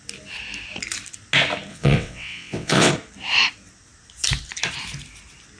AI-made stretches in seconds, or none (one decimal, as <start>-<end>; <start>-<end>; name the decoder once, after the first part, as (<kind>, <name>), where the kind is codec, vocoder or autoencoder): 1.7-2.9 (vocoder, WaveNeXt)